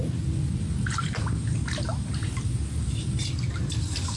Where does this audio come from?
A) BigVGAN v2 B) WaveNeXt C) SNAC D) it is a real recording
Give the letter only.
D